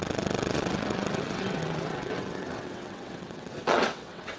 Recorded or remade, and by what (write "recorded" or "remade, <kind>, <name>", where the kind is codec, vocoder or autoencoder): remade, vocoder, WaveNeXt